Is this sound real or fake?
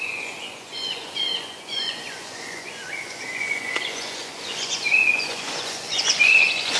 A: fake